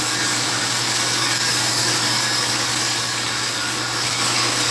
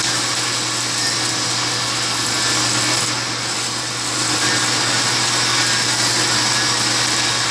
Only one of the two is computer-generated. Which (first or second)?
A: first